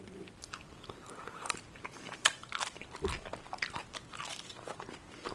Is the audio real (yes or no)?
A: no